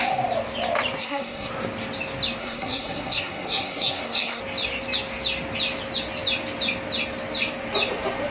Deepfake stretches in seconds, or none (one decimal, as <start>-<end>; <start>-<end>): 1.0-1.5; 2.4-4.4